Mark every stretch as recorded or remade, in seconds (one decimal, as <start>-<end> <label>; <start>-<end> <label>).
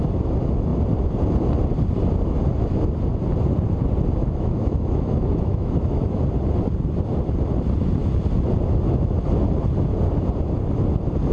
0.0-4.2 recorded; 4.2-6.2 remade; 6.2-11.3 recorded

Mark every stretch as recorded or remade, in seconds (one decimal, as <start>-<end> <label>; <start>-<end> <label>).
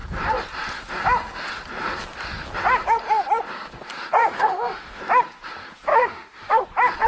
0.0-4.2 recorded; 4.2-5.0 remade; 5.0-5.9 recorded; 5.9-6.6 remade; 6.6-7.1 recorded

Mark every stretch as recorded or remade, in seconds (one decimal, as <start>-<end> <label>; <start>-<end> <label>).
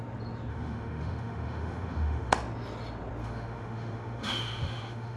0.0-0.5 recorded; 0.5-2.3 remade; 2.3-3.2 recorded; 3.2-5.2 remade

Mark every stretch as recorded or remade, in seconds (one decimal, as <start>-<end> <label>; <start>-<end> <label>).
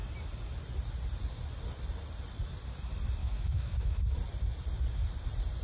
0.0-3.2 recorded; 3.2-4.0 remade; 4.0-5.6 recorded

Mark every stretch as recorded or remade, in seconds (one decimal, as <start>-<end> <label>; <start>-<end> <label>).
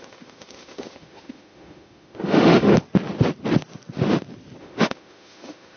0.0-2.7 remade; 2.7-4.6 recorded; 4.6-5.8 remade